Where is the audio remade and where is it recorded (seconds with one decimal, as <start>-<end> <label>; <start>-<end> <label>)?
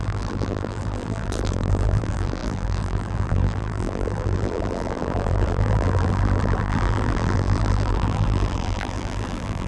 0.0-9.7 remade